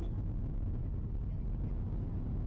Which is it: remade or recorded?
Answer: recorded